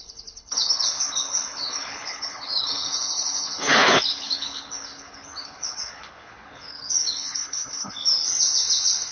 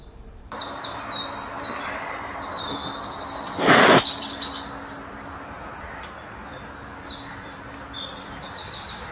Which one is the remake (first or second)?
first